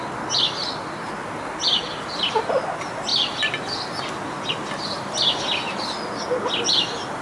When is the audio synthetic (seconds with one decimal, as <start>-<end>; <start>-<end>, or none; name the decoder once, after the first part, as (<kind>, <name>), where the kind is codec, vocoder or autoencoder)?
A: none